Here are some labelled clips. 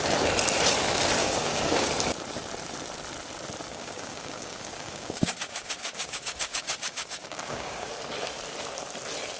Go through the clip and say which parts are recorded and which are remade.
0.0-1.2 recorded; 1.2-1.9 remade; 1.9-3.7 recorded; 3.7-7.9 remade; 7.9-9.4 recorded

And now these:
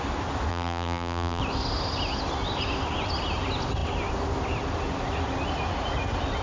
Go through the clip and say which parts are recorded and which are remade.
0.0-0.5 recorded; 0.5-1.4 remade; 1.4-6.4 recorded